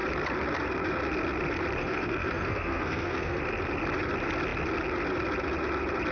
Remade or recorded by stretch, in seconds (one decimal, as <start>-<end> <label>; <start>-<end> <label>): 0.0-1.8 recorded; 1.8-3.4 remade; 3.4-6.1 recorded